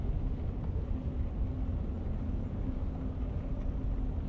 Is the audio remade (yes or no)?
no